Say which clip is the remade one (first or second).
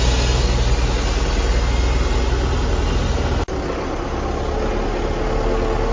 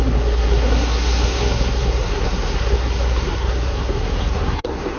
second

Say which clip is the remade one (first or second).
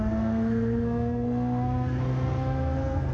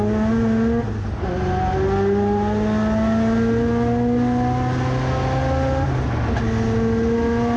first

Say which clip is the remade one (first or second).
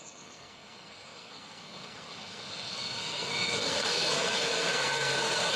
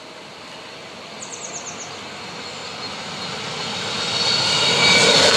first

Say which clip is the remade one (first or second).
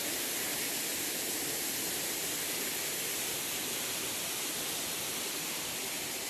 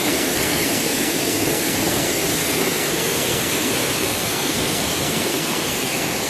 second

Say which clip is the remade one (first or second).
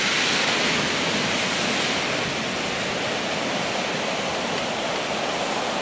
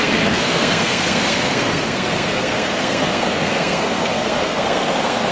second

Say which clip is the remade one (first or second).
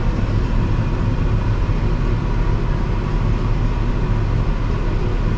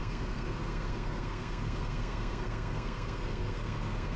second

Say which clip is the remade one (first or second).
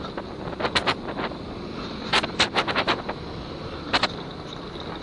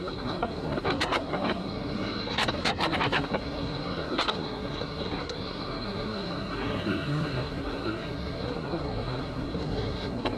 second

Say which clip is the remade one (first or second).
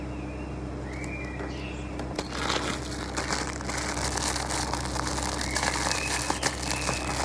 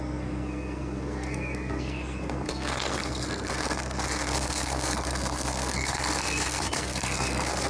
second